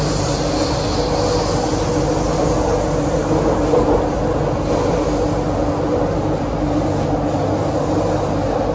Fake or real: real